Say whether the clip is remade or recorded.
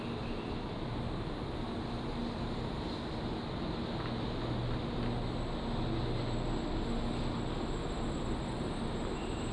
recorded